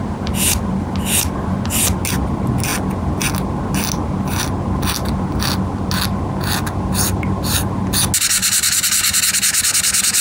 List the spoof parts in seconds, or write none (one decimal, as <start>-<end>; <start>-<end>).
8.4-9.2